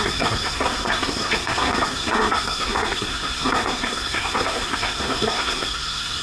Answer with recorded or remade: remade